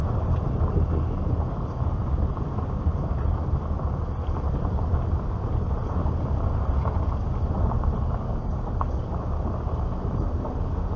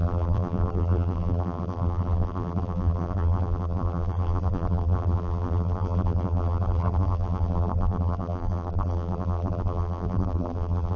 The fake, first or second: second